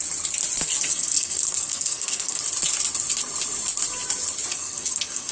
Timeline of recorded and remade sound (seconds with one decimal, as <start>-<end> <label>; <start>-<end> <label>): 0.0-0.9 recorded; 0.9-2.4 remade; 2.4-4.5 recorded; 4.5-5.3 remade